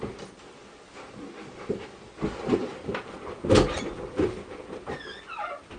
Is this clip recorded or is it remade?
recorded